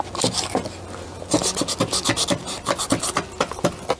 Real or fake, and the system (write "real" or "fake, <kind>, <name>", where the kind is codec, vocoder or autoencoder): real